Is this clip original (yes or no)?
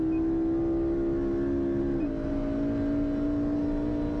yes